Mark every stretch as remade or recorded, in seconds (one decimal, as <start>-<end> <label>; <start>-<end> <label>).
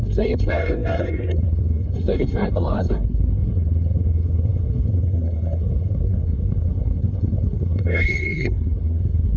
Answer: 0.0-9.4 remade